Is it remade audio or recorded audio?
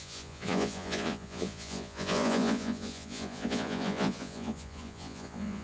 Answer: remade